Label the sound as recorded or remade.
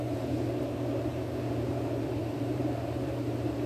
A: remade